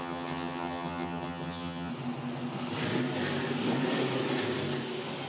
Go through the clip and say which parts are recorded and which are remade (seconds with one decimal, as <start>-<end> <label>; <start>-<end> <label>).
0.0-1.9 remade; 1.9-5.3 recorded